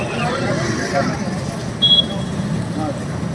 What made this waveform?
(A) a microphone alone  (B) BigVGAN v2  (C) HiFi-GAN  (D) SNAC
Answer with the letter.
A